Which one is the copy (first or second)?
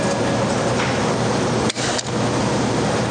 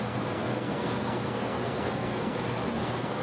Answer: second